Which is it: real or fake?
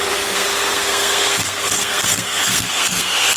fake